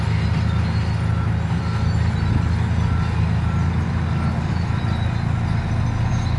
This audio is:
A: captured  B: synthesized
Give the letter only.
A